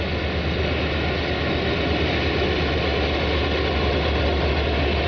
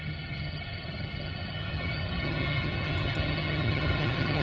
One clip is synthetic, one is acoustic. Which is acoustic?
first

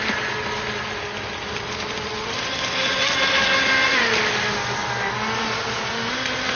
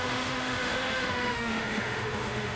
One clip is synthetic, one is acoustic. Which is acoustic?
first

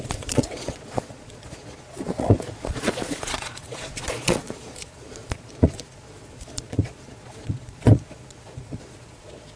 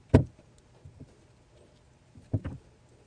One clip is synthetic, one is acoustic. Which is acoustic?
second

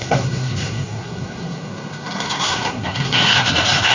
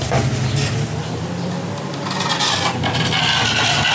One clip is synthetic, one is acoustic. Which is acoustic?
second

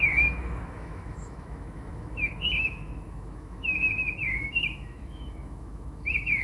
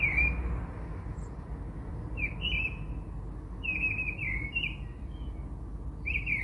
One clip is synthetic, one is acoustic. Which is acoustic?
second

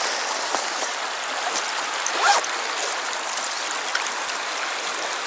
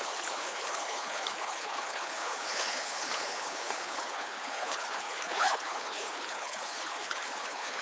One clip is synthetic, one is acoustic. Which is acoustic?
first